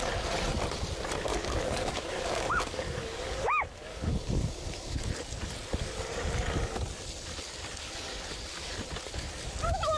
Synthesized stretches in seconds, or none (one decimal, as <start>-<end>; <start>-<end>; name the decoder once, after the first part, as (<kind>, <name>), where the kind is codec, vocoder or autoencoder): 1.3-5.1 (codec, DAC)